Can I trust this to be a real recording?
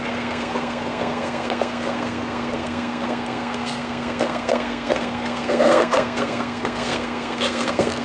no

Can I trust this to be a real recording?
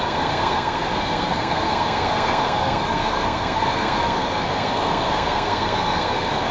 no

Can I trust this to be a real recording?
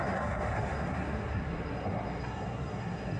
no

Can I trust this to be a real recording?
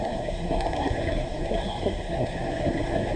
no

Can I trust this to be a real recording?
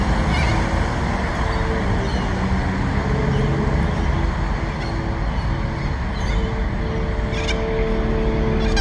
yes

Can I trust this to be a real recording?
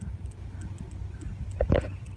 yes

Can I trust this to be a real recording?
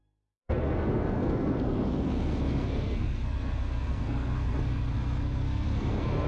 no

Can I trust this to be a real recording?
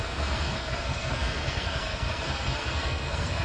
no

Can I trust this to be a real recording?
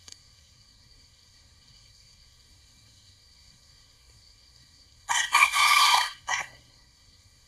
no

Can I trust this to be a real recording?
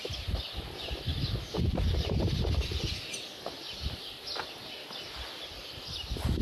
yes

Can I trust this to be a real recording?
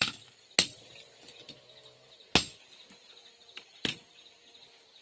yes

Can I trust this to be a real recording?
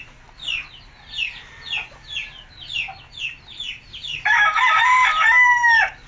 yes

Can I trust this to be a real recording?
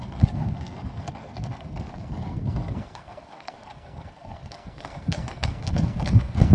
no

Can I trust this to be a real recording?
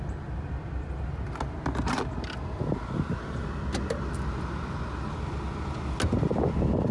yes